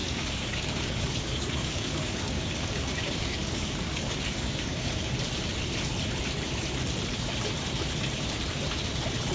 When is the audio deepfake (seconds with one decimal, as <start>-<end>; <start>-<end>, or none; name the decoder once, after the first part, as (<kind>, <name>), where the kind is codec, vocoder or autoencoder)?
0.0-5.1 (codec, DAC)